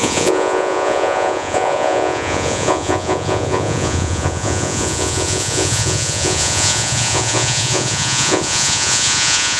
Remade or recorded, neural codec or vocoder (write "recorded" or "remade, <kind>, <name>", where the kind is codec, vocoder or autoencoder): remade, vocoder, Vocos